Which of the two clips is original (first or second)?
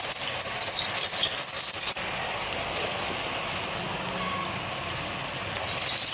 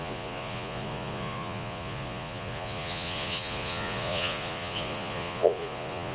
first